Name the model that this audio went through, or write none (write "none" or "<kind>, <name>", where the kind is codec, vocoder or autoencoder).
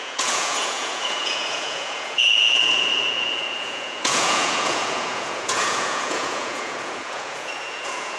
vocoder, Vocos